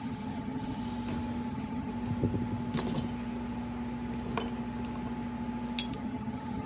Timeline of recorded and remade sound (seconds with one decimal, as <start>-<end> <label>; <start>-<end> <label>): 0.0-0.8 remade; 0.8-1.5 recorded; 1.5-1.9 remade; 1.9-5.9 recorded; 5.9-6.7 remade